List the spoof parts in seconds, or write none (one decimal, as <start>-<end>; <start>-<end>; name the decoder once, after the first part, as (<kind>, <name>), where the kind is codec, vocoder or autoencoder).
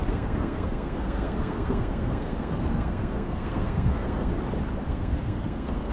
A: 0.0-4.3 (codec, SNAC); 4.9-5.9